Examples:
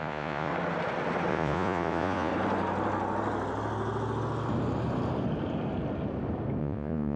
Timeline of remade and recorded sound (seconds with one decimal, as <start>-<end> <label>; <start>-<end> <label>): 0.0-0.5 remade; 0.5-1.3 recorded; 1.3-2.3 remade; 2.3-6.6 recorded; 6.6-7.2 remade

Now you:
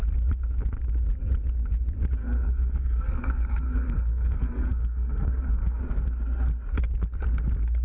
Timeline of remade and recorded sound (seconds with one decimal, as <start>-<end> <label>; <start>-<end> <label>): 0.0-2.2 recorded; 2.2-5.9 remade; 5.9-7.8 recorded

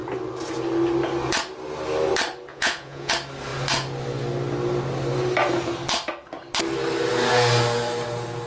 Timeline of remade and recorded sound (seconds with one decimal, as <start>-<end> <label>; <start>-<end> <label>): 0.0-2.5 recorded; 2.5-3.1 remade; 3.1-8.5 recorded

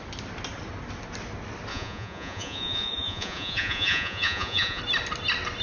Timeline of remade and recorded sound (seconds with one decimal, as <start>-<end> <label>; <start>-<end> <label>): 0.0-1.7 recorded; 1.7-4.8 remade; 4.8-5.6 recorded

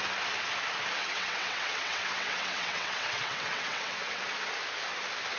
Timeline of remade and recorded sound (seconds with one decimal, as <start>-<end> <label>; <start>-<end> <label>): 0.0-1.0 recorded; 1.0-4.2 remade; 4.2-5.4 recorded